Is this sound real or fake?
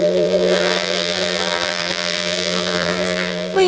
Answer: fake